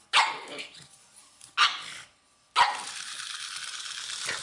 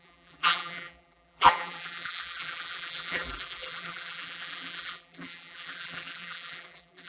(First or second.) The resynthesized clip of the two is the second